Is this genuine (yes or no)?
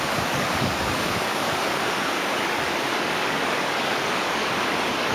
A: no